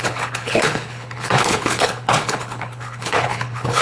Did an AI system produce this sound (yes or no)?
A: yes